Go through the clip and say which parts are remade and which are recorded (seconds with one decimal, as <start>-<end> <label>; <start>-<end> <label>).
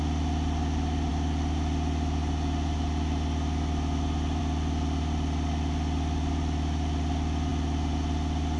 0.0-8.6 recorded